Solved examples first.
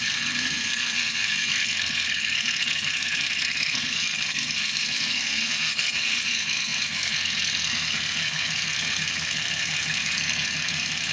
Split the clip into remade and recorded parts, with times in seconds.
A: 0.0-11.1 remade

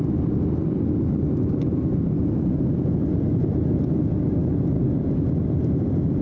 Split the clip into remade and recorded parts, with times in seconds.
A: 0.0-6.2 recorded

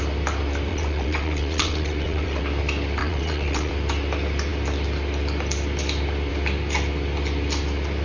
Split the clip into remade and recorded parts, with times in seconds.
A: 0.0-0.7 recorded; 0.7-2.4 remade; 2.4-3.0 recorded; 3.0-3.7 remade; 3.7-8.0 recorded

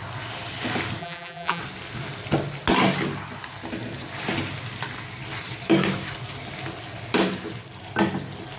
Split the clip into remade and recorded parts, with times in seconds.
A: 0.0-1.0 recorded; 1.0-1.6 remade; 1.6-8.6 recorded

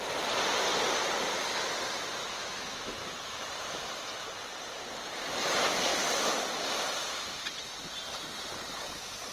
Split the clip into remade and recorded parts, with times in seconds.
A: 0.0-2.2 recorded; 2.2-3.4 remade; 3.4-9.3 recorded

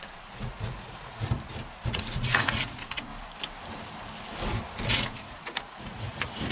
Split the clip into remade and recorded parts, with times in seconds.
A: 0.0-1.3 remade; 1.3-1.8 recorded; 1.8-3.1 remade; 3.1-4.9 recorded; 4.9-6.5 remade

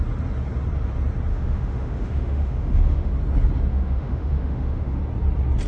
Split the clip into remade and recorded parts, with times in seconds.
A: 0.0-1.3 recorded; 1.3-3.1 remade; 3.1-3.7 recorded; 3.7-5.0 remade; 5.0-5.7 recorded